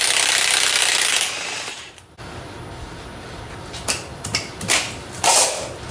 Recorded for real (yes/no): yes